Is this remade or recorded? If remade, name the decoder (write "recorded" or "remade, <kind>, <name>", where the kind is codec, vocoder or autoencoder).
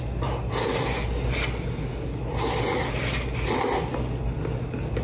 recorded